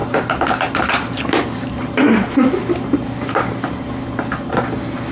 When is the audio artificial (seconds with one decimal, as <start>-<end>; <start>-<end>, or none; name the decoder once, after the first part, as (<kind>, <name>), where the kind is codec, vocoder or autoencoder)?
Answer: 0.0-2.3 (vocoder, BigVGAN v2)